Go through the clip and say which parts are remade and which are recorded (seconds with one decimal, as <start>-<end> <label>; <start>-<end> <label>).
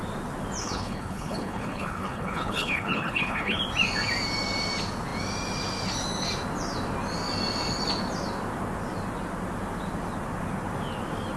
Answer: 0.0-0.6 recorded; 0.6-3.6 remade; 3.6-11.4 recorded